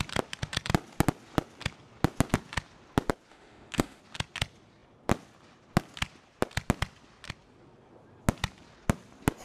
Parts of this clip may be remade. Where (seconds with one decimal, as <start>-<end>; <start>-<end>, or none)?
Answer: 3.3-4.0